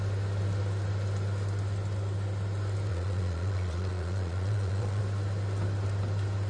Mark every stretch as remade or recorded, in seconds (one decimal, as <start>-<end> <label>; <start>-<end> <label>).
0.0-2.9 recorded; 2.9-5.0 remade; 5.0-6.5 recorded